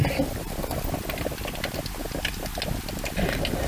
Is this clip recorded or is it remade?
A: recorded